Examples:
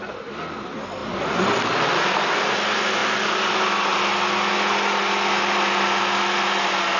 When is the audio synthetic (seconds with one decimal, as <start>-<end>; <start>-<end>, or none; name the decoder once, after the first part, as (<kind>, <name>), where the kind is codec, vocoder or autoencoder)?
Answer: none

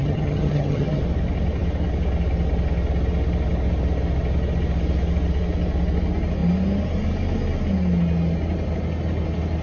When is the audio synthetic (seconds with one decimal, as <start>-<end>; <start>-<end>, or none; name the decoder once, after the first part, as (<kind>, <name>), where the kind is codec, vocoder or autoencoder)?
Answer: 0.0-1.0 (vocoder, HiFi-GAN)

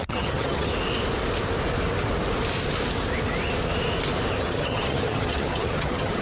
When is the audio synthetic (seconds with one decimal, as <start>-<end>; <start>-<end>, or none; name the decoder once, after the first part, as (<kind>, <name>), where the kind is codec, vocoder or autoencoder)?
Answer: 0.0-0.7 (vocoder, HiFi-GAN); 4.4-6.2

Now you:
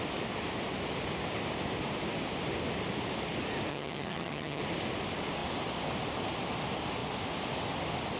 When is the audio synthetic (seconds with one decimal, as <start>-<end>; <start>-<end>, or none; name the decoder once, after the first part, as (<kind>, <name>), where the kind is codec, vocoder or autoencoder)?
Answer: 3.7-4.6 (vocoder, HiFi-GAN)

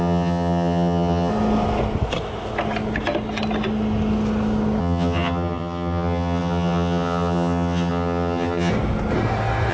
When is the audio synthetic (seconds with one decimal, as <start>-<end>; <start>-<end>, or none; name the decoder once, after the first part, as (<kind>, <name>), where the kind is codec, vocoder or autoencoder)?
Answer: 0.0-1.3 (vocoder, HiFi-GAN); 4.8-8.7

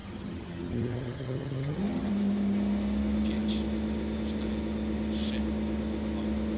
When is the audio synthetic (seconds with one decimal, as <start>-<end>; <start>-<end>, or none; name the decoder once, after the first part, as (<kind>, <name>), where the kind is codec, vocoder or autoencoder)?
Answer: 0.0-2.1 (vocoder, HiFi-GAN)